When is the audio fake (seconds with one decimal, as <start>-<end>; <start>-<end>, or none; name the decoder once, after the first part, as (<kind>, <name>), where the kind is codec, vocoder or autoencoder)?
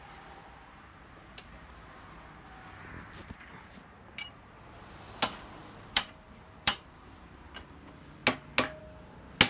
4.2-4.9 (vocoder, BigVGAN v2); 5.6-7.8